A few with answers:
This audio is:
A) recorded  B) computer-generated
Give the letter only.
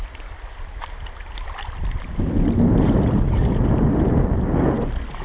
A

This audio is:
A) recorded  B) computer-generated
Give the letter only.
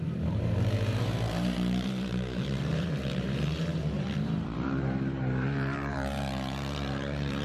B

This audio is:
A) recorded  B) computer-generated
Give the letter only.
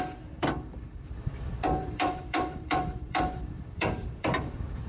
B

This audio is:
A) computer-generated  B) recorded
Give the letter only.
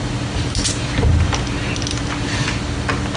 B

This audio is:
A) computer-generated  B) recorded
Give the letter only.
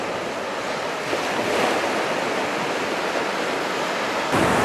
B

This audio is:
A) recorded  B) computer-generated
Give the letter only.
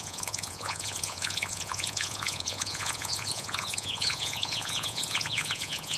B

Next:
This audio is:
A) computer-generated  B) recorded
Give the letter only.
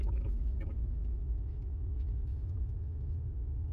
A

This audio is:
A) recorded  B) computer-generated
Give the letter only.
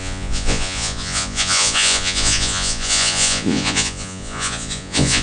B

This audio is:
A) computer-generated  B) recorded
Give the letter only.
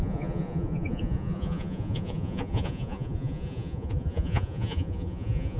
A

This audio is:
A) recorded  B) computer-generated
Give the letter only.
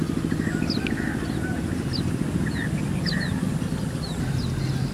A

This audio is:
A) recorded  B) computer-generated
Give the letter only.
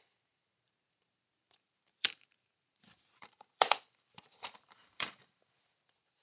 B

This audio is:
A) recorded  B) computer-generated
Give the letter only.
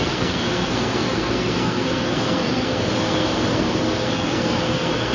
B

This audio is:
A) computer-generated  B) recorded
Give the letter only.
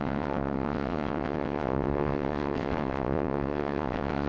A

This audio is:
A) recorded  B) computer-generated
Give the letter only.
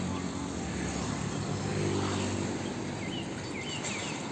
A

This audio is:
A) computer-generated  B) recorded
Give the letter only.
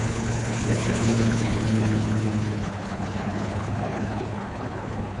A